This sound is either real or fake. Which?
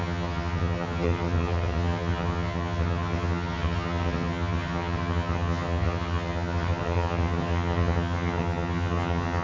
fake